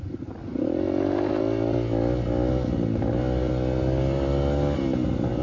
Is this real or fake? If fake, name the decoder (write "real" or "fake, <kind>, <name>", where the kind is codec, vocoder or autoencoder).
real